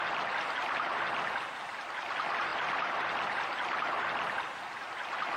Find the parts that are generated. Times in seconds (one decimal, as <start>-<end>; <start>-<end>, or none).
none

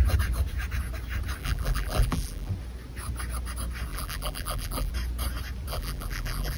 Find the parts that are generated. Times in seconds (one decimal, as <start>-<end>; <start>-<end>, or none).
1.4-2.5; 3.9-4.9; 5.7-6.6

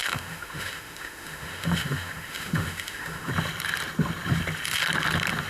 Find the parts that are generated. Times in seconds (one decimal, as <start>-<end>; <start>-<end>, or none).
0.0-3.3